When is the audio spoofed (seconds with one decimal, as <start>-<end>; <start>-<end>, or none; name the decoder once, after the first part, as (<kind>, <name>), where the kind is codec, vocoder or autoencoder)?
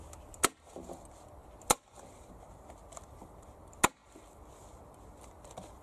none